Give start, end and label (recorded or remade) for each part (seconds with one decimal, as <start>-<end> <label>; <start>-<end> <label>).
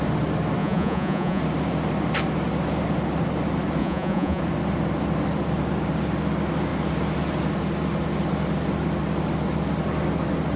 0.0-0.6 recorded; 0.6-1.4 remade; 1.4-3.8 recorded; 3.8-4.4 remade; 4.4-10.6 recorded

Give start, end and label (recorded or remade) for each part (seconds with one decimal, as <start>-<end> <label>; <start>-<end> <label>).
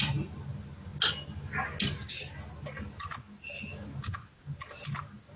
0.0-5.4 recorded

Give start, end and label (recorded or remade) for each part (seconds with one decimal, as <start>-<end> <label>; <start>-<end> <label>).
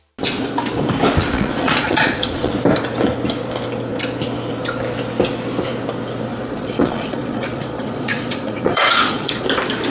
0.0-1.2 recorded; 1.2-2.5 remade; 2.5-6.3 recorded; 6.3-9.4 remade; 9.4-9.9 recorded